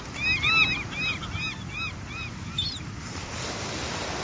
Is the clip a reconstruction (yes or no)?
no